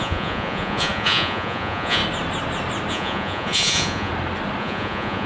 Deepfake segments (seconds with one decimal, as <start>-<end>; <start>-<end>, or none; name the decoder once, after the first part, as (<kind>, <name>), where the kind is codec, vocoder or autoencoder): 0.0-2.0 (vocoder, Vocos); 2.9-4.1; 4.6-5.3